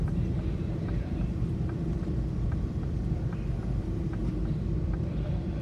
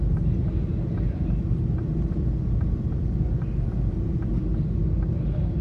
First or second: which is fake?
first